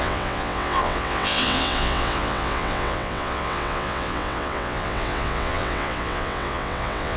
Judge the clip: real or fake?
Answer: fake